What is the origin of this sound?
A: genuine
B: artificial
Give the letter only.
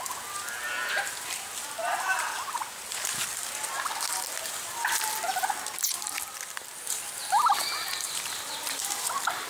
A